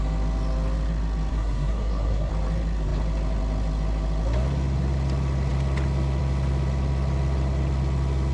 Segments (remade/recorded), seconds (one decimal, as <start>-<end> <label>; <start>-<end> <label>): 0.0-1.3 recorded; 1.3-2.3 remade; 2.3-8.3 recorded